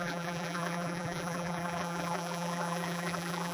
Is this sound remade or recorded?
remade